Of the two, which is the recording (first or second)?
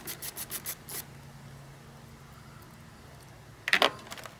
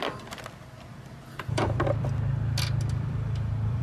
first